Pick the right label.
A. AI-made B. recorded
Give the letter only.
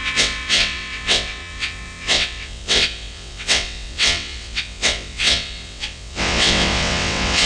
A